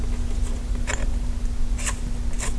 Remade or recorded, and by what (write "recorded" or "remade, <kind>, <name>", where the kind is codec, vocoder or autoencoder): recorded